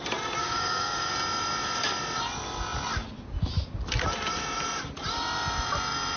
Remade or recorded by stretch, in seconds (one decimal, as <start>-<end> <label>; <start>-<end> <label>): 0.0-0.4 recorded; 0.4-1.1 remade; 1.1-6.2 recorded